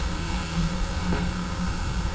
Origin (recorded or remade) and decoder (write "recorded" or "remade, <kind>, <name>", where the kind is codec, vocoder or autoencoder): remade, codec, SNAC